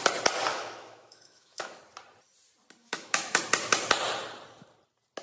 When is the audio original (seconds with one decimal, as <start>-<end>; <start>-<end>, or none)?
0.0-0.5; 1.8-2.8; 3.4-5.2